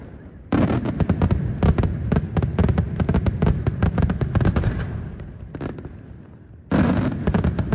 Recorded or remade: recorded